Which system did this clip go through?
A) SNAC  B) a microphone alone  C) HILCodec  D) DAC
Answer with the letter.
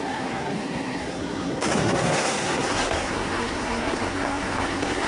A